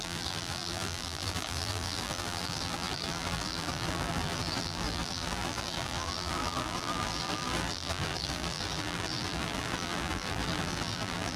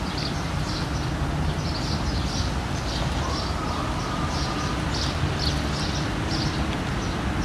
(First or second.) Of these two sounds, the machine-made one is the first